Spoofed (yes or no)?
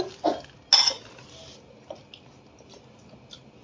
no